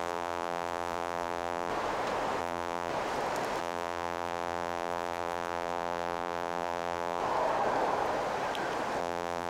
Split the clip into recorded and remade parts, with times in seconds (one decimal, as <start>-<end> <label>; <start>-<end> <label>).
0.0-1.7 remade; 1.7-2.4 recorded; 2.4-2.9 remade; 2.9-3.6 recorded; 3.6-7.2 remade; 7.2-9.0 recorded; 9.0-9.5 remade